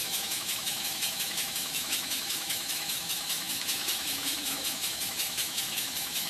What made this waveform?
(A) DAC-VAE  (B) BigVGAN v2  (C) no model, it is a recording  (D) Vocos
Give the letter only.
A